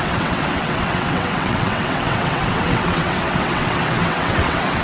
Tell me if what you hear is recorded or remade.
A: remade